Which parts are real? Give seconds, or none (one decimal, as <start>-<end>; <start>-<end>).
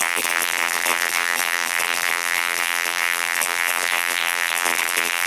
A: none